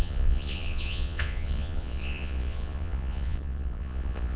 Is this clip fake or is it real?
fake